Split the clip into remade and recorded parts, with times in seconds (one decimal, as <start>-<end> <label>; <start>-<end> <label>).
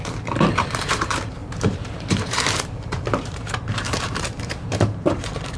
0.0-5.6 remade